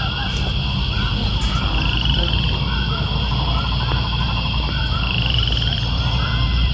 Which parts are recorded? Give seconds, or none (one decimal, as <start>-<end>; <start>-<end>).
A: 1.1-4.8